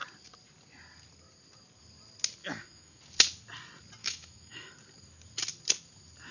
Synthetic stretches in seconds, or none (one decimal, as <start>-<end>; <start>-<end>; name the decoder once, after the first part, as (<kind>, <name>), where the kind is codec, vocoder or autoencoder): 2.4-3.0 (autoencoder, DAC-VAE); 4.0-4.7